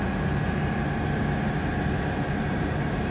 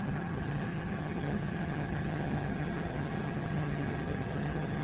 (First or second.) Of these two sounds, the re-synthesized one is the second